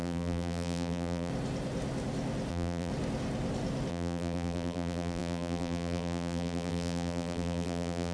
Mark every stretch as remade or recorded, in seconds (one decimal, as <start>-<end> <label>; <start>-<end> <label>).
0.0-1.3 remade; 1.3-2.5 recorded; 2.5-2.9 remade; 2.9-3.9 recorded; 3.9-8.1 remade